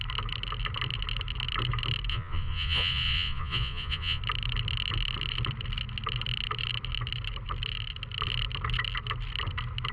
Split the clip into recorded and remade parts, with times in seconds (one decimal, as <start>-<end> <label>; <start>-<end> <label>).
0.0-2.1 recorded; 2.1-4.2 remade; 4.2-9.9 recorded